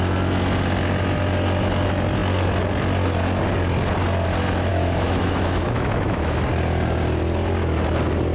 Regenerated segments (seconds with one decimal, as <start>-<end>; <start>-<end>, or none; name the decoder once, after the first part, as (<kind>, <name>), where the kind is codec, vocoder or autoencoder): 4.7-6.4 (autoencoder, DAC-VAE)